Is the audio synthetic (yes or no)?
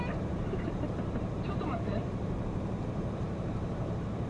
yes